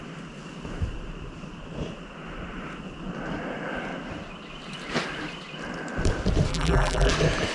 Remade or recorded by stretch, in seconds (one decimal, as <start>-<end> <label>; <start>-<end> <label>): 0.0-6.5 recorded; 6.5-7.1 remade; 7.1-7.5 recorded